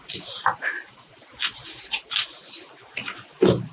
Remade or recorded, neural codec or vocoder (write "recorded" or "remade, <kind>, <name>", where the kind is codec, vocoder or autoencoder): remade, vocoder, BigVGAN v2